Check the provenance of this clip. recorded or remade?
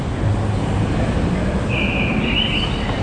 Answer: recorded